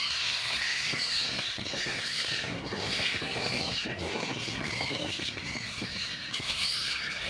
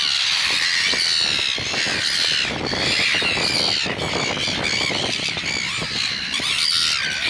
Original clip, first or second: second